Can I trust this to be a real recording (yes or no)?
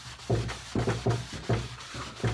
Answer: yes